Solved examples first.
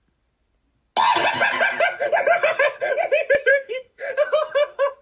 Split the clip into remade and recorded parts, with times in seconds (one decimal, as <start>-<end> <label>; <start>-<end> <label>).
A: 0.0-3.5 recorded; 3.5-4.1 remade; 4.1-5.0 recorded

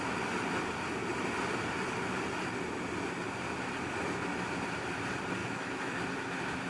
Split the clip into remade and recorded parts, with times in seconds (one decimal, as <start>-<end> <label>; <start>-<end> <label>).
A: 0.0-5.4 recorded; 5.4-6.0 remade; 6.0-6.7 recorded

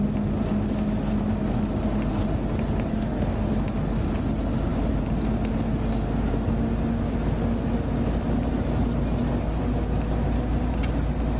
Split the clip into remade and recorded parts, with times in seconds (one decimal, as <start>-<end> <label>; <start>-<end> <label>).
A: 0.0-2.9 recorded; 2.9-3.5 remade; 3.5-11.4 recorded